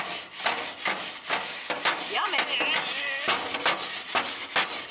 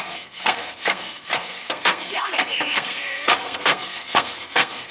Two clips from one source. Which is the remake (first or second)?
second